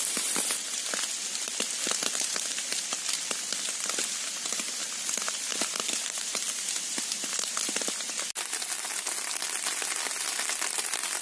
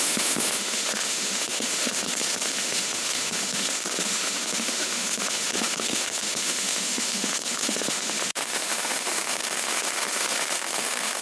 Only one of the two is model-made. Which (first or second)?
second